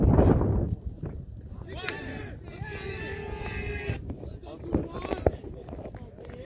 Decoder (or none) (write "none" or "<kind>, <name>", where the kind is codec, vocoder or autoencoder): none